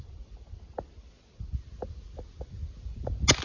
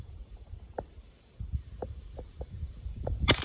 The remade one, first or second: second